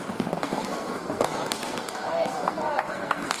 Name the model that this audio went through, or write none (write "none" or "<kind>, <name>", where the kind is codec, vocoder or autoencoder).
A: codec, SNAC